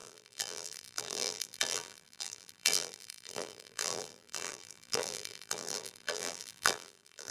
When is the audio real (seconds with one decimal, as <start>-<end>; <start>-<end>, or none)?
none

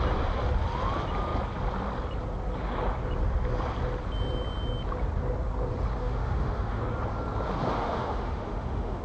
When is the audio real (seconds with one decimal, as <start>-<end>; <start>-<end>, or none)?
0.0-6.0; 6.8-7.7

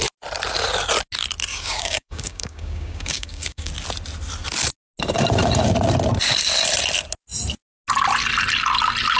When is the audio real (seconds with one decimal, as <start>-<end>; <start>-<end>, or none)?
0.0-1.5; 3.7-9.2